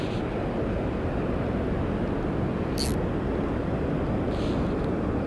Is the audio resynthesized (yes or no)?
no